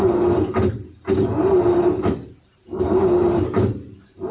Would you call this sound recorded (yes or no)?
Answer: yes